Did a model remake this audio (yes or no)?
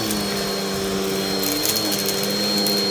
no